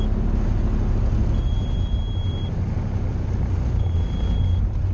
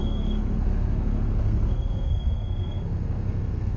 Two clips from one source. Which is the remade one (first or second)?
second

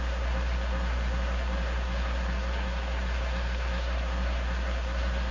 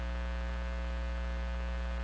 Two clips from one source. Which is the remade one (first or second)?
first